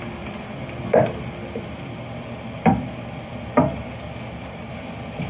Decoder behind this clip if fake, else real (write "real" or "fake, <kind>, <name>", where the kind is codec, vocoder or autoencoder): real